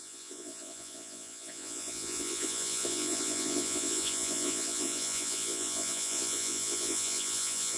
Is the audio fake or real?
fake